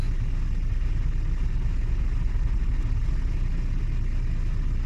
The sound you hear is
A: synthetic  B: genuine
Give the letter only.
B